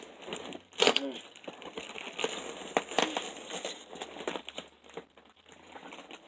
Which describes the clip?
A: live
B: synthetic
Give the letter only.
A